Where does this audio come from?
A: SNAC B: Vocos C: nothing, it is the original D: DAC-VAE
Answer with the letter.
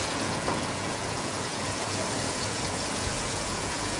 B